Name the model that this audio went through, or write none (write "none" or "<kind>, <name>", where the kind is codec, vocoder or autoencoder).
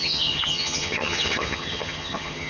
vocoder, HiFi-GAN